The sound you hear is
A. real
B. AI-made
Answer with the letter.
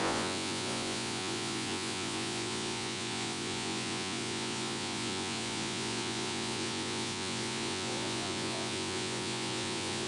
B